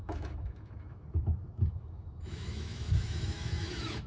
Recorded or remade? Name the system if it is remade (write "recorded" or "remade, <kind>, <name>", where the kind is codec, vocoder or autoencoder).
remade, autoencoder, DAC-VAE